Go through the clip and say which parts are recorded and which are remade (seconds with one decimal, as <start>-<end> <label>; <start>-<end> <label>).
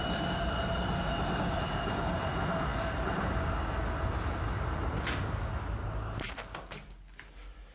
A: 0.0-7.7 recorded